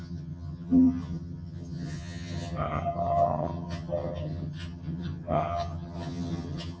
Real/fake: fake